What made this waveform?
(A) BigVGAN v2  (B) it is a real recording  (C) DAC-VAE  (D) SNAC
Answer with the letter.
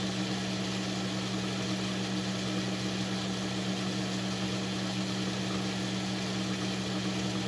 B